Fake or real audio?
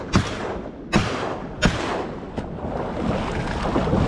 real